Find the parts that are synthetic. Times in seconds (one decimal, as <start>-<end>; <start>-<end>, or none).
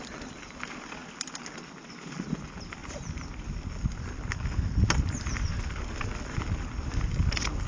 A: none